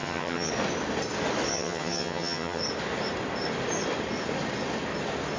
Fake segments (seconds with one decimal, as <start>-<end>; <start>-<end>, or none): 0.0-0.5; 1.5-2.6